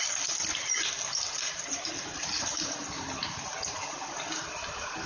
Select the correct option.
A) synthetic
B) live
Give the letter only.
B